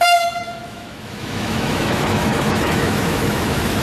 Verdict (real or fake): fake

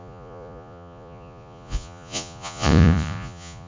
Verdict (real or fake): fake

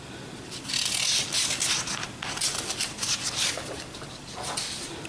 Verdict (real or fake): real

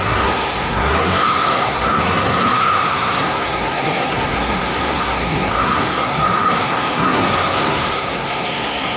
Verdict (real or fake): fake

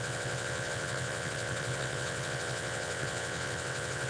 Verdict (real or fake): fake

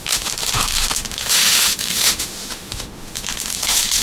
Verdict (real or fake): fake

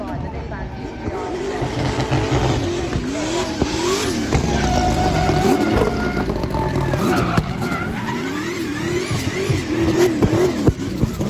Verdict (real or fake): real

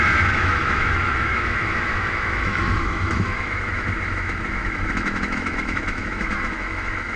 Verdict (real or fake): fake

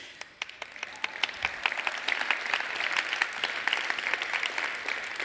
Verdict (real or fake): real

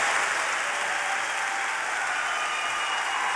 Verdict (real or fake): real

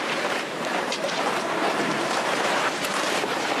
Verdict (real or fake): fake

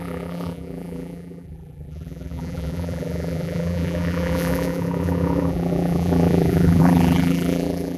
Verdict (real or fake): fake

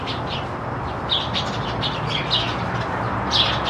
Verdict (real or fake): fake